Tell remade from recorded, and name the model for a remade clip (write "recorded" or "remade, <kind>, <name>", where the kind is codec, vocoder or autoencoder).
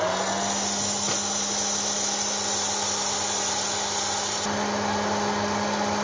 recorded